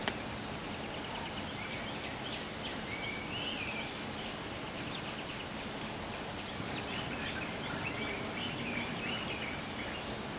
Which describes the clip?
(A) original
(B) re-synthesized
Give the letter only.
A